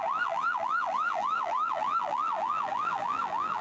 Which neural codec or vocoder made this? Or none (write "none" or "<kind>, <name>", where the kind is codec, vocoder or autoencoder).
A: vocoder, BigVGAN v2